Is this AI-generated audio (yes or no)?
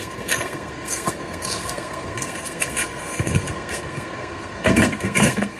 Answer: yes